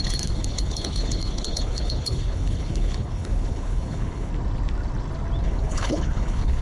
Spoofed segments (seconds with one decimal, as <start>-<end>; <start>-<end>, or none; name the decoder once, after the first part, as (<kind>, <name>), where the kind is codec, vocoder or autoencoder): 0.0-4.3 (codec, HILCodec); 5.4-6.6